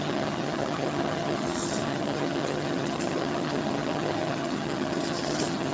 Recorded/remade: remade